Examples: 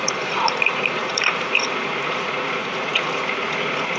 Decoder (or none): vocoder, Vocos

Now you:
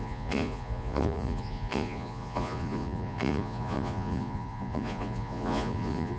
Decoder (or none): vocoder, Vocos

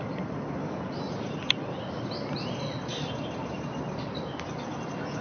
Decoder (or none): none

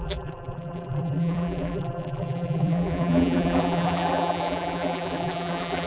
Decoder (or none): vocoder, BigVGAN v2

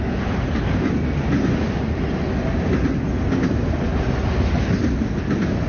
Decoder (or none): none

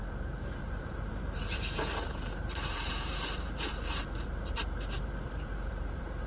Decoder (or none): vocoder, BigVGAN v2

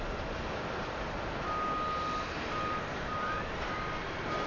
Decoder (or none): none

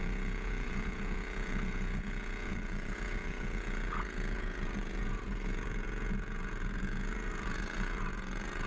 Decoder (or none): vocoder, Vocos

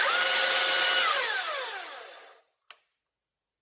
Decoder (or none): none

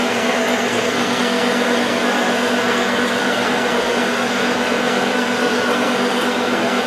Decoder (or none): codec, SNAC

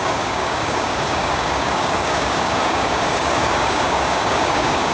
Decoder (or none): codec, DAC